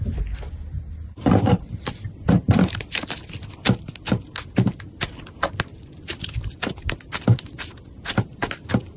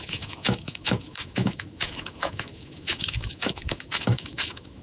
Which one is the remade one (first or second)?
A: second